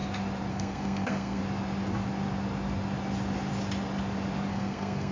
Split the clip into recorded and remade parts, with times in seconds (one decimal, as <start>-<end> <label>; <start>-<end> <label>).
0.0-0.5 recorded; 0.5-1.4 remade; 1.4-4.5 recorded; 4.5-5.1 remade

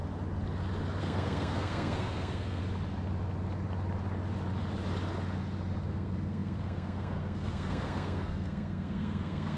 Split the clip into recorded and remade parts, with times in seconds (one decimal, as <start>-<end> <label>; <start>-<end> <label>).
0.0-1.0 recorded; 1.0-2.6 remade; 2.6-5.9 recorded; 5.9-9.6 remade

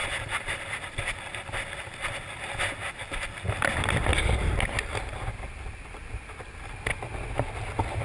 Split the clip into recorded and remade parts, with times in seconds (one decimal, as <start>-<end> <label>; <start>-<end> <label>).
0.0-8.0 recorded

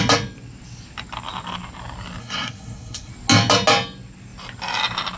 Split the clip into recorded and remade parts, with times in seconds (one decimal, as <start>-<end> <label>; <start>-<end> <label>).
0.0-2.2 recorded; 2.2-3.1 remade; 3.1-5.2 recorded

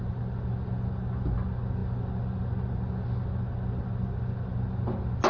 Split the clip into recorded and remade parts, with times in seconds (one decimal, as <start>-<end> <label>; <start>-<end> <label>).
0.0-5.3 recorded

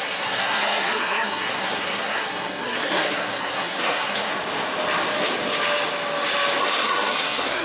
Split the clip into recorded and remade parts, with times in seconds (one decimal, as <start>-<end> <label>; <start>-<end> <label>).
0.0-4.3 remade; 4.3-6.6 recorded; 6.6-7.6 remade